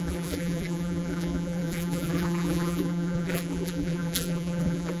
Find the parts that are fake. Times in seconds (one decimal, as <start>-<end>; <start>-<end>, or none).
0.0-5.0